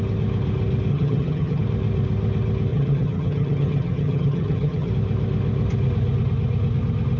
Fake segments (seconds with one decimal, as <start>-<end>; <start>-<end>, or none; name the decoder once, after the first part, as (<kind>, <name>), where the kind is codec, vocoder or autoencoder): 0.9-1.6 (vocoder, HiFi-GAN); 2.7-4.9